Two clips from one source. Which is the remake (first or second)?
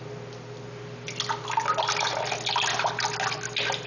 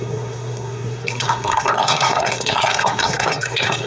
second